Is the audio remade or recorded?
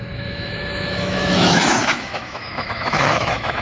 remade